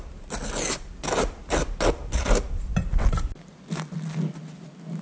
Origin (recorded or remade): recorded